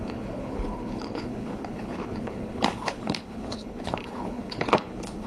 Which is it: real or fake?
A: fake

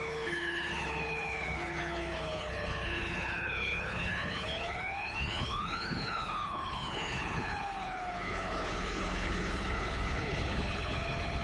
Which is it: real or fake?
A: fake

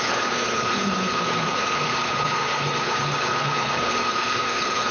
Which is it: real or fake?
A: fake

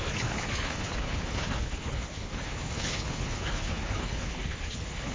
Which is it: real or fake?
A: fake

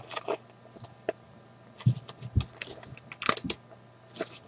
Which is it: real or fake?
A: real